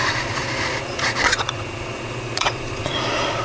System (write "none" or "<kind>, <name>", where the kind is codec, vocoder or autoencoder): vocoder, Vocos